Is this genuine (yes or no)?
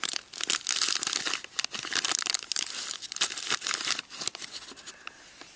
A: yes